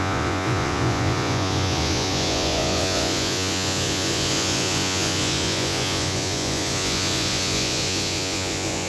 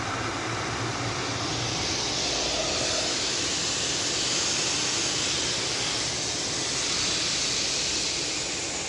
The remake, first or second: first